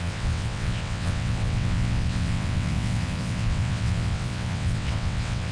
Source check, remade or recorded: remade